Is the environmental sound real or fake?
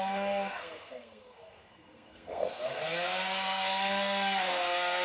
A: fake